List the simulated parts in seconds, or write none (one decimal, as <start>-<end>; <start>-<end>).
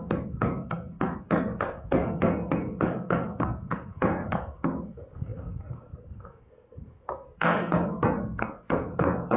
0.0-9.4